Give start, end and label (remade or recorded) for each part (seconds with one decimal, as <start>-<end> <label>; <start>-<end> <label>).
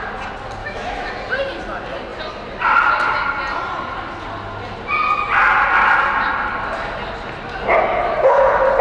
0.0-0.6 recorded; 0.6-1.1 remade; 1.1-8.8 recorded